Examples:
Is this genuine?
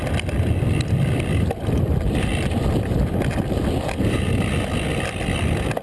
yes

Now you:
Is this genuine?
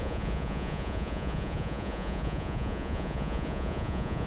no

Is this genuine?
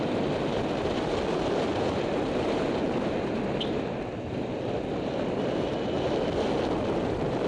yes